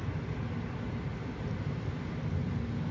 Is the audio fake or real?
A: real